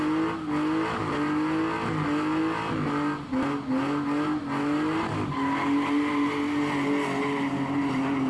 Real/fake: real